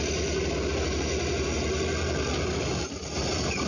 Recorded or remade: recorded